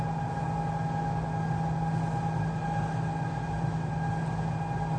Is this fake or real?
real